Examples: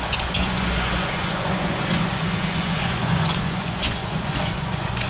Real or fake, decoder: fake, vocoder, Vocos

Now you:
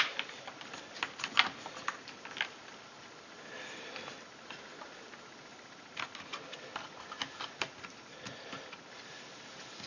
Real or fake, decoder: real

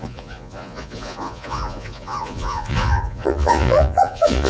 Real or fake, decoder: fake, vocoder, Vocos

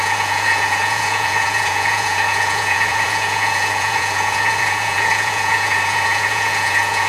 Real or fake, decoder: fake, vocoder, Vocos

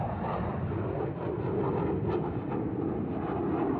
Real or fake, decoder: real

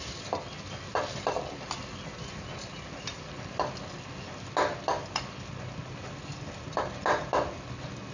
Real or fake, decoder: real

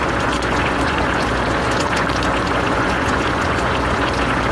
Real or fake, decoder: fake, vocoder, Vocos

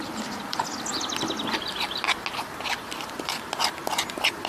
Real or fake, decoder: real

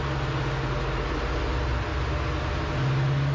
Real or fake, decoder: real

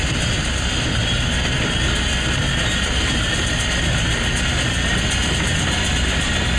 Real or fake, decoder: real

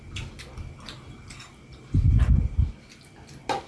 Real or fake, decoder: real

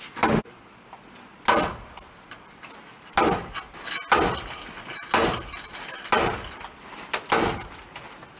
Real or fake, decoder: real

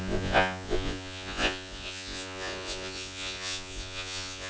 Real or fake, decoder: fake, vocoder, Vocos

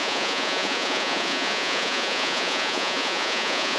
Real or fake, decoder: fake, vocoder, Vocos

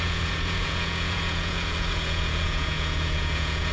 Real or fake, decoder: fake, vocoder, Vocos